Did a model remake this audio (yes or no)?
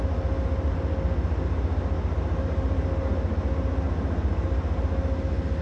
no